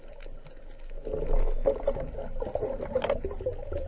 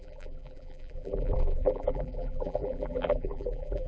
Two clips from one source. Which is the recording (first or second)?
first